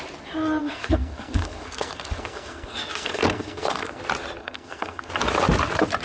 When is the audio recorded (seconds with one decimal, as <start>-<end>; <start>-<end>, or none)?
0.0-0.6; 4.0-4.4; 5.1-6.0